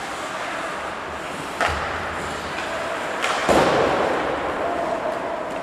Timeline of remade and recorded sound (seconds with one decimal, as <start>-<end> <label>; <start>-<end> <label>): 0.0-5.6 recorded